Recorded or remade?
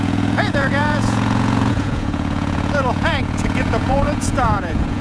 remade